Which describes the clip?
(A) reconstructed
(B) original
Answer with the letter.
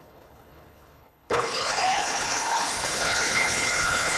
A